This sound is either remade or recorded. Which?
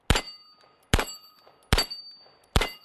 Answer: recorded